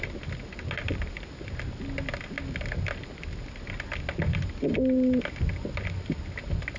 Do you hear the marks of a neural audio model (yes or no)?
no